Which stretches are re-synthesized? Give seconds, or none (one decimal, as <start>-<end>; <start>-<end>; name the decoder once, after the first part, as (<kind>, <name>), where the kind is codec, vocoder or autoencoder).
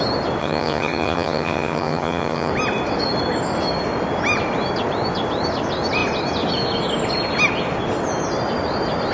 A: 0.4-2.5 (vocoder, HiFi-GAN)